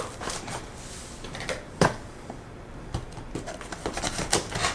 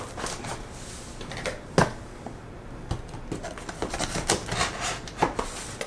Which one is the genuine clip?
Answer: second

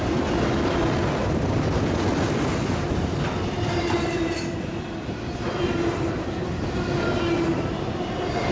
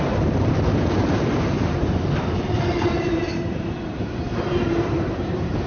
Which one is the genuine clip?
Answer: first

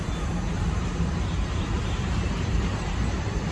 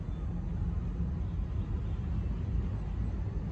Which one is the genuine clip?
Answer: second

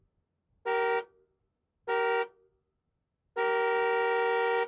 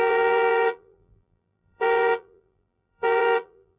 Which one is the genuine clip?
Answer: first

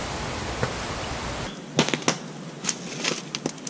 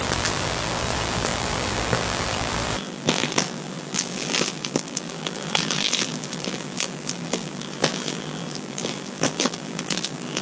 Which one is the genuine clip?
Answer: first